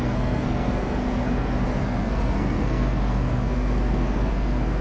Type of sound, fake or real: fake